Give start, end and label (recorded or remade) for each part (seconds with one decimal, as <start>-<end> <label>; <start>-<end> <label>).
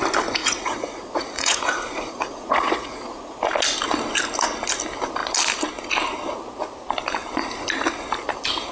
0.0-0.4 recorded; 0.4-3.5 remade; 3.5-8.7 recorded